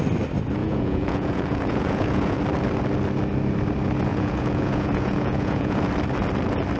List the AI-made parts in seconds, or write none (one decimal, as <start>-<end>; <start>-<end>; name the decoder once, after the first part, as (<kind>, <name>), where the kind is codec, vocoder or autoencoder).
0.6-2.4 (vocoder, Vocos); 4.1-5.9